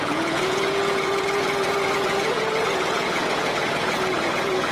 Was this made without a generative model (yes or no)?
no